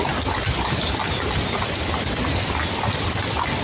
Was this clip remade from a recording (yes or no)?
no